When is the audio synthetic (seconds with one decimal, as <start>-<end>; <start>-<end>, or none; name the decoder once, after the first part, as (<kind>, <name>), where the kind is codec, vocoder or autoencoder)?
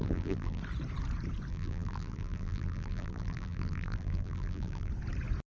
0.0-0.6 (vocoder, BigVGAN v2); 1.5-4.9